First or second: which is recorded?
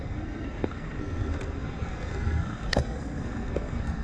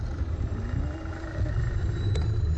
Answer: second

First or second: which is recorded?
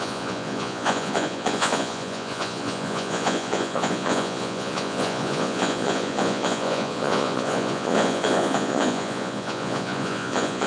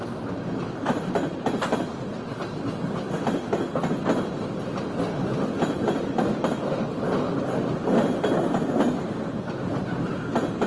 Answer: second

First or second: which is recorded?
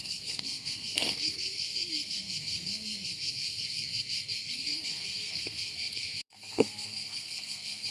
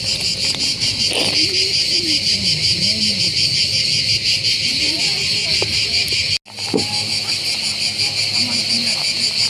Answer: second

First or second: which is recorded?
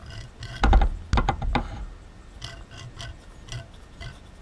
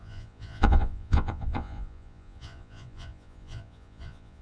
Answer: first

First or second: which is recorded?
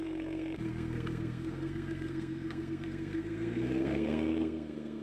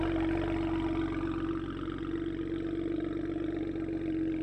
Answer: second